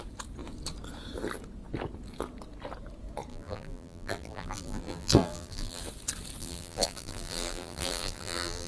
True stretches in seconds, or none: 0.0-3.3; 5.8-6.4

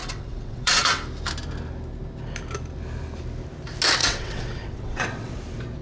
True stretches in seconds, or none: 1.0-4.0; 5.3-5.8

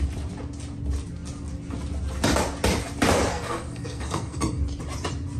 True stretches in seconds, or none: 0.0-3.3; 4.6-5.4

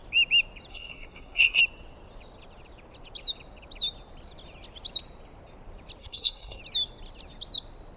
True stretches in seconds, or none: 0.0-0.7; 1.6-6.0; 6.6-8.0

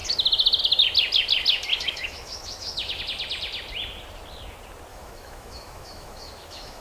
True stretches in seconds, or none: 0.0-1.7; 3.0-4.9

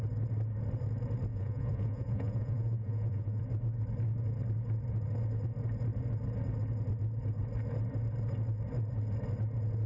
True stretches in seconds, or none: 0.0-1.3; 3.4-9.9

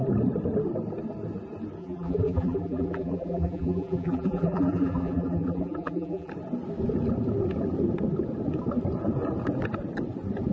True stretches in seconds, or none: 0.0-1.8; 6.3-10.5

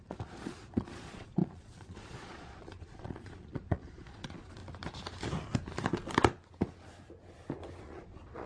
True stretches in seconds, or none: 4.6-7.8